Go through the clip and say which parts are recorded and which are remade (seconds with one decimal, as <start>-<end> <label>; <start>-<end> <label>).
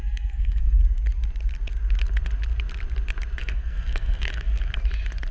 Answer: 0.0-0.8 remade; 0.8-3.4 recorded; 3.4-4.7 remade; 4.7-5.3 recorded